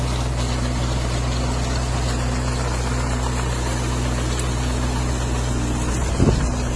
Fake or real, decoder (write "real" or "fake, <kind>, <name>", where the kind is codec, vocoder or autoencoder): real